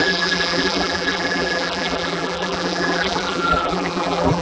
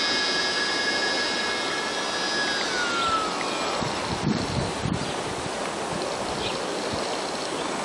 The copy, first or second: first